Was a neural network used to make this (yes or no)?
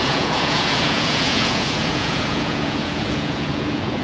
yes